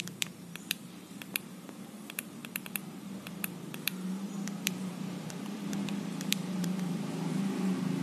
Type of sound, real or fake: fake